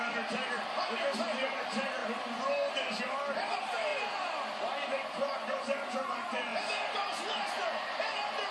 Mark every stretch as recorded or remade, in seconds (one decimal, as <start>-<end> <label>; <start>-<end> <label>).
0.0-2.0 remade; 2.0-3.0 recorded; 3.0-3.9 remade; 3.9-6.1 recorded; 6.1-8.5 remade